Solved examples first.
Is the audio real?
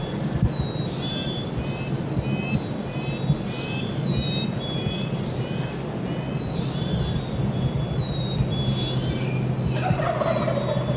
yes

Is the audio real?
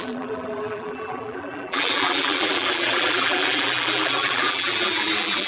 no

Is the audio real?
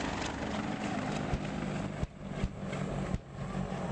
yes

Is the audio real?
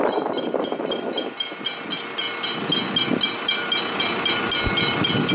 yes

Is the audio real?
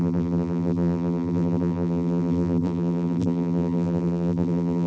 no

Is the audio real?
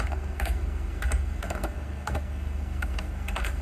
no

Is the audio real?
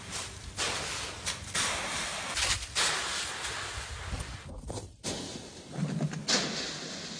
yes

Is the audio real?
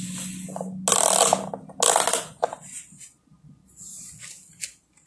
yes